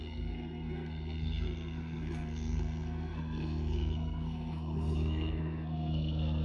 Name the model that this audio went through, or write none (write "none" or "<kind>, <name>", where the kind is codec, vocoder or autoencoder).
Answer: codec, SNAC